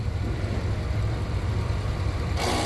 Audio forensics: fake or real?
fake